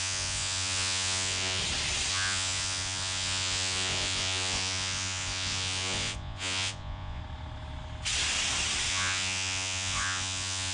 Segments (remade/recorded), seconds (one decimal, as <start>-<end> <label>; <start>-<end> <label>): 0.0-1.6 remade; 1.6-2.1 recorded; 2.1-7.2 remade; 7.2-8.9 recorded; 8.9-10.7 remade